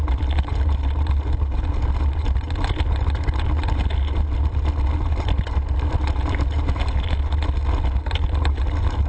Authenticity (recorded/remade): recorded